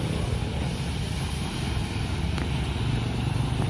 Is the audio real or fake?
real